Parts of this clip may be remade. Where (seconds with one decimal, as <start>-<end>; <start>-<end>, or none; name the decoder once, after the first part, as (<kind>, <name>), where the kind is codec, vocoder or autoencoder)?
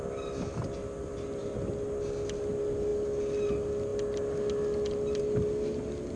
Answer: none